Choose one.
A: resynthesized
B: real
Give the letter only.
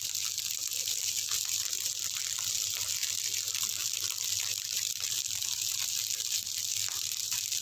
A